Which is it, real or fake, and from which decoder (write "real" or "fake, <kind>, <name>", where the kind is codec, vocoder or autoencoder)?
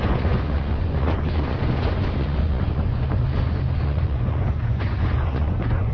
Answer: fake, vocoder, Vocos